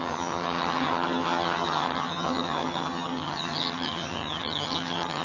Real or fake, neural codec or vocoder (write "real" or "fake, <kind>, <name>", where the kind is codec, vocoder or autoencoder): fake, vocoder, HiFi-GAN